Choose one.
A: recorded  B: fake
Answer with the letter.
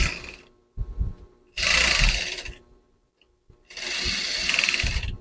A